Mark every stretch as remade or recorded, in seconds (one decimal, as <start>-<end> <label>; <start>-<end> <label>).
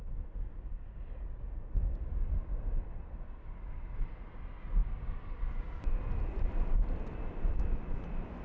0.0-8.4 recorded